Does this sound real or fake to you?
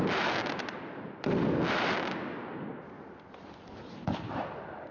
real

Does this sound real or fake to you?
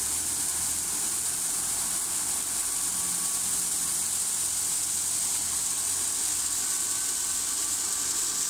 real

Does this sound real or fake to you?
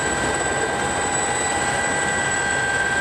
fake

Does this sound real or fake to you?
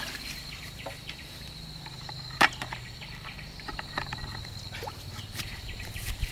fake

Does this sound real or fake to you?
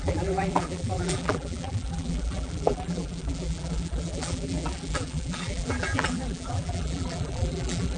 fake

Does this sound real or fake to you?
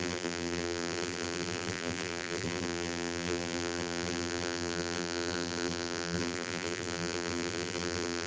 fake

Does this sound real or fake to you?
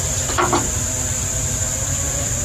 fake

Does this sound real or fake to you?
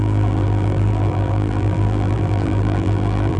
fake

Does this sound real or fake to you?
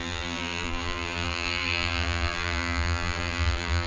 fake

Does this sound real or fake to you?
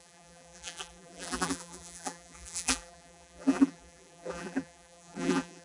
fake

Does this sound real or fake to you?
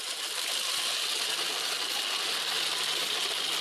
real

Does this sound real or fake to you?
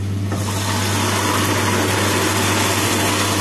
real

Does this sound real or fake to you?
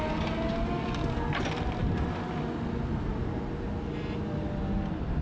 real